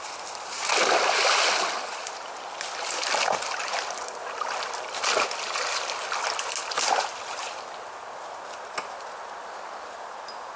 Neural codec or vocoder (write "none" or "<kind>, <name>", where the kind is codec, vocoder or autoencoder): none